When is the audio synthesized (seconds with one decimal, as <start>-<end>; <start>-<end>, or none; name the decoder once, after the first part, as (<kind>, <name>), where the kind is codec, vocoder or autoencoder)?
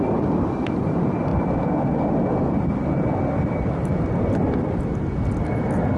none